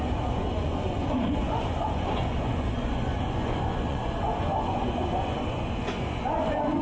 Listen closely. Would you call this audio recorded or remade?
remade